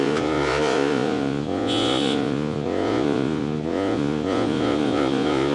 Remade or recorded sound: remade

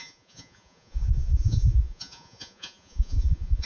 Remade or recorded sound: remade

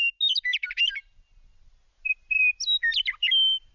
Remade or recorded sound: recorded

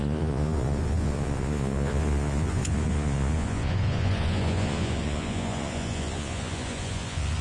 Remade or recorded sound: remade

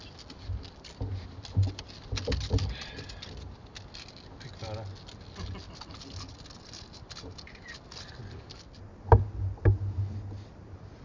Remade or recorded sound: recorded